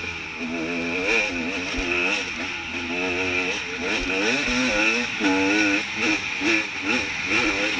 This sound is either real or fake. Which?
real